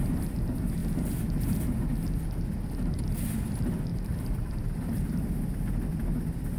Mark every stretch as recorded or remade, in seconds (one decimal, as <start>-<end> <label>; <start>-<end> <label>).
0.0-3.9 recorded; 3.9-5.2 remade; 5.2-6.6 recorded